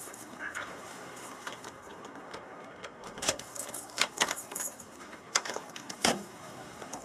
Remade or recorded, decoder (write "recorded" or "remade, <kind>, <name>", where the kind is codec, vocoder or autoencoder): remade, codec, SNAC